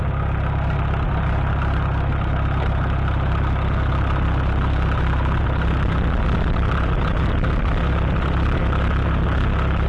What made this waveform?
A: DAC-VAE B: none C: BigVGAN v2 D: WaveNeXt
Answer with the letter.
B